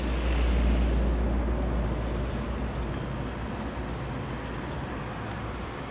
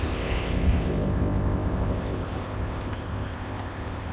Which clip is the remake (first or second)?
second